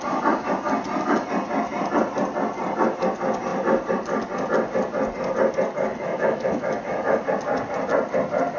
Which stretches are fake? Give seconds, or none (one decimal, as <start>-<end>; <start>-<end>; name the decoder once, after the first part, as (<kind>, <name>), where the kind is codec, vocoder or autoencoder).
5.9-7.2 (autoencoder, DAC-VAE)